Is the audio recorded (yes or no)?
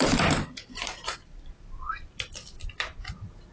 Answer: yes